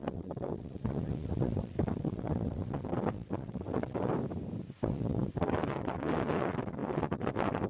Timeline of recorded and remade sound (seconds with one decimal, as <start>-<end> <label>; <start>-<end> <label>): 0.0-4.1 remade; 4.1-4.7 recorded; 4.7-7.7 remade